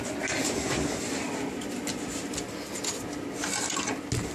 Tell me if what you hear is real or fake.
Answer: real